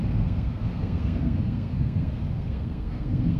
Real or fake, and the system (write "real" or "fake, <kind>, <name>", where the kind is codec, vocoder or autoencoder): fake, codec, SNAC